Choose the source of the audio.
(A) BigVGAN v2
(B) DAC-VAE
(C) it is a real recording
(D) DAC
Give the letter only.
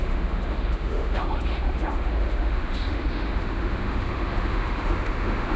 B